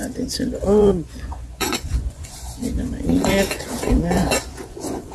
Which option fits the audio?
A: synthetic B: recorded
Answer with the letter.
A